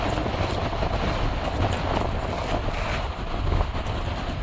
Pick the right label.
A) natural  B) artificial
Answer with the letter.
A